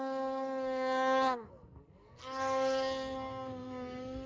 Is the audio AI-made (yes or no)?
yes